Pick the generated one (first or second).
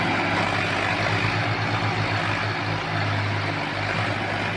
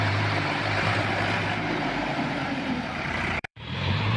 second